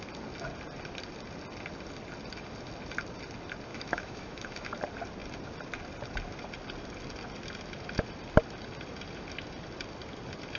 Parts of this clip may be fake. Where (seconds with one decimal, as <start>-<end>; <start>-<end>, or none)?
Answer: 3.7-4.7